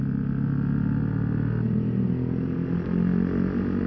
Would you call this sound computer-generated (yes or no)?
no